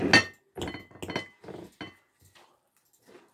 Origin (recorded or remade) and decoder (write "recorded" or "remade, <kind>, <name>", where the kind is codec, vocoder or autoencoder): recorded